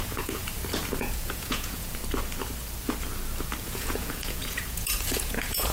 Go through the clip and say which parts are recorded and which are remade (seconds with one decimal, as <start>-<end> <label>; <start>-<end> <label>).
0.0-0.4 remade; 0.4-1.0 recorded; 1.0-2.0 remade; 2.0-3.6 recorded; 3.6-5.7 remade